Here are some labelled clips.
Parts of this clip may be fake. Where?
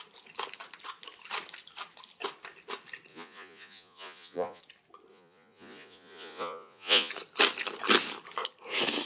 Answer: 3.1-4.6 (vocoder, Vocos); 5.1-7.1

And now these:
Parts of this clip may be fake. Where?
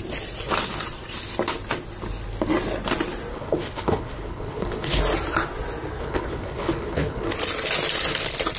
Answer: 3.3-5.0 (codec, HILCodec); 6.0-7.3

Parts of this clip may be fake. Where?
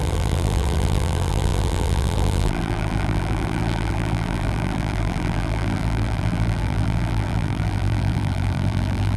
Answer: 0.0-9.2 (vocoder, BigVGAN v2)